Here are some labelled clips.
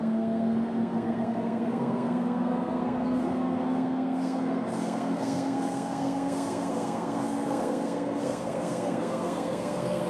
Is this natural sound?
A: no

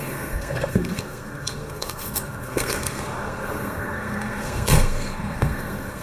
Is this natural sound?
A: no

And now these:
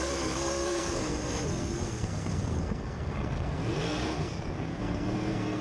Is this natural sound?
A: no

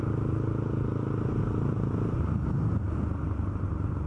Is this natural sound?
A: yes